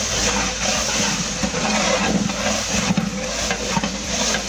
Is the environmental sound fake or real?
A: real